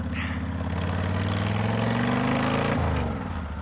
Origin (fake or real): real